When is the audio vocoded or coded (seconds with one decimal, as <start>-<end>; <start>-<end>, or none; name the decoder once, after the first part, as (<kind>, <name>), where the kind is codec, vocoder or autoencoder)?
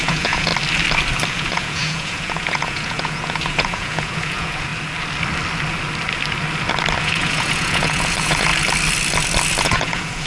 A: 0.0-0.5 (vocoder, Vocos); 1.3-4.7; 7.0-8.5; 9.6-10.3